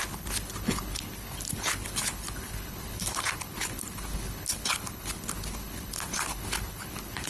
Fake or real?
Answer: fake